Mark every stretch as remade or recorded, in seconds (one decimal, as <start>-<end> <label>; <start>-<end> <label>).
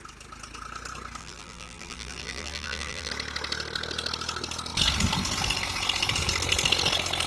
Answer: 0.0-1.2 recorded; 1.2-3.1 remade; 3.1-7.3 recorded